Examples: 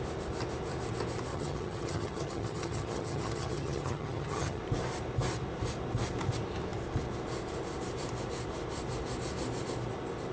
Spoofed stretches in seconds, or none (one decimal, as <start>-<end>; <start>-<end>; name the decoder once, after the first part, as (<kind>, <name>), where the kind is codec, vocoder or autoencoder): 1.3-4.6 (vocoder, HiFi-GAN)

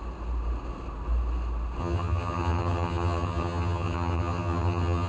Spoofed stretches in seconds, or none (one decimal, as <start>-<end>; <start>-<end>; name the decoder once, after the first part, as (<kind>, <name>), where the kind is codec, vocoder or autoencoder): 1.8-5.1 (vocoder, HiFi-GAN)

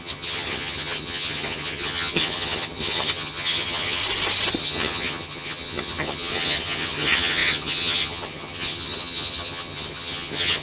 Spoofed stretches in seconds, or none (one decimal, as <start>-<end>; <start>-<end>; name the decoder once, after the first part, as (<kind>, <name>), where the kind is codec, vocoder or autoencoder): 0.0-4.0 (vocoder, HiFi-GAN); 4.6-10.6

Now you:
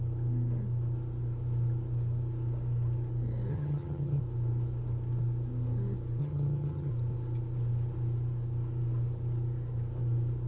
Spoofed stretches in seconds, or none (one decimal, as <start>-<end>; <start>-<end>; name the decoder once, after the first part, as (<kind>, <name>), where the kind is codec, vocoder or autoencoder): 3.5-4.2 (vocoder, HiFi-GAN); 6.2-6.9

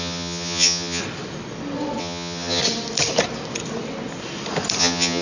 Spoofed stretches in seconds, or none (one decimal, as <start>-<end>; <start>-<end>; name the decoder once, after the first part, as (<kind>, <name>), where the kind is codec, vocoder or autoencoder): 0.0-1.0 (vocoder, HiFi-GAN); 2.0-2.6; 4.8-5.2

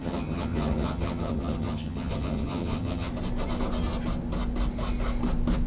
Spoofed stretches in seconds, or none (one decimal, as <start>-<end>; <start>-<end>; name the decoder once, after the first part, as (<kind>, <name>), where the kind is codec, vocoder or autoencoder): 0.0-3.1 (vocoder, HiFi-GAN)